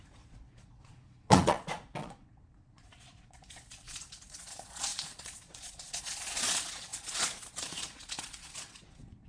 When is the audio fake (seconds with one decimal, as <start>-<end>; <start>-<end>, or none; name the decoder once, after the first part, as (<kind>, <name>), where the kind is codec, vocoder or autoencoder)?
0.0-9.3 (vocoder, Vocos)